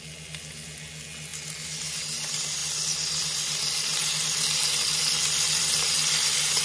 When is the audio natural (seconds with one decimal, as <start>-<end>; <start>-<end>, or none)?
0.0-6.6